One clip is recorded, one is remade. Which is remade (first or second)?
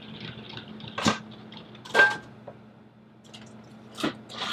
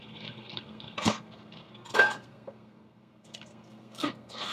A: second